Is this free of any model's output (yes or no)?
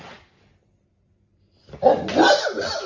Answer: yes